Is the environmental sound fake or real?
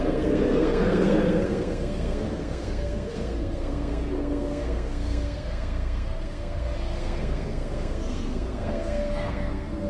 fake